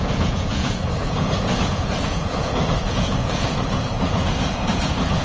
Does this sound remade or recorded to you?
remade